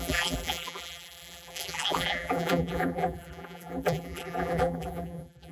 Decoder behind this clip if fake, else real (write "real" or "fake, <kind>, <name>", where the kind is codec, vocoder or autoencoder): fake, vocoder, BigVGAN v2